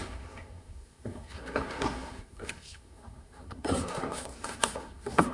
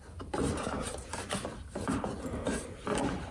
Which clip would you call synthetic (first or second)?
first